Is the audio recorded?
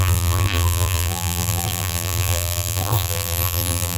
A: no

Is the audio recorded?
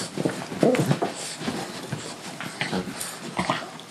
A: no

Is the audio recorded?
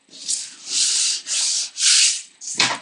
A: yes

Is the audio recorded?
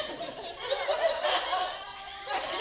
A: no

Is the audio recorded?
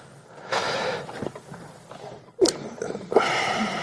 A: no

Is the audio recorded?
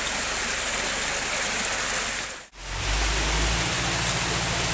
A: yes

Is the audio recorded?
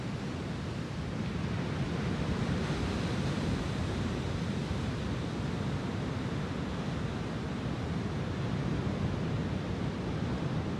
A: no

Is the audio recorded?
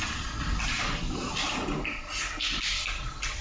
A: yes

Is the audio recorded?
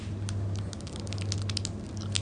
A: yes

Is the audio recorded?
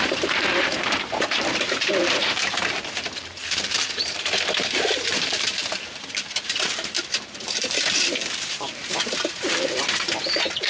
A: no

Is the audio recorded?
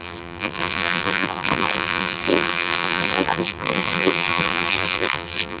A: no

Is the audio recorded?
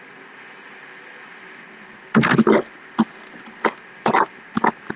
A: yes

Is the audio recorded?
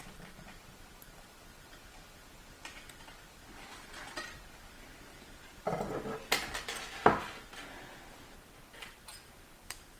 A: yes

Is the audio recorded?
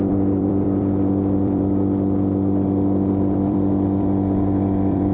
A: no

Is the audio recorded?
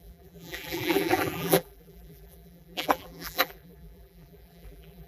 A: no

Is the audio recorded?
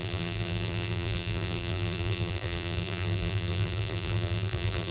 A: no